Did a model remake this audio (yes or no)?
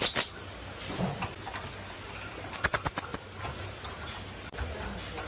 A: no